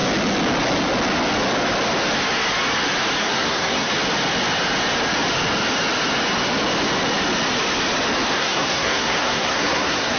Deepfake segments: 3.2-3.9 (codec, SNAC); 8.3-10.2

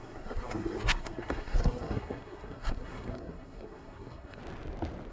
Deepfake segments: 0.0-4.4 (codec, SNAC)

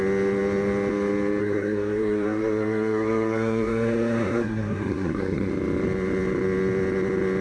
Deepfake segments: 1.4-5.5 (codec, SNAC)

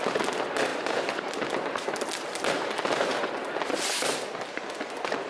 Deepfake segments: none

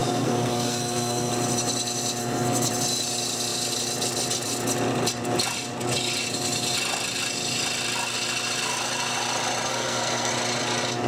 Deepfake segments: 0.0-1.3 (codec, SNAC); 2.2-2.7; 9.7-10.3

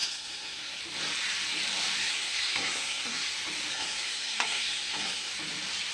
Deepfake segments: 0.0-0.8 (codec, SNAC); 2.0-3.3; 3.7-5.3